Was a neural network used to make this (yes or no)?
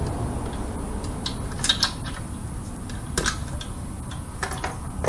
no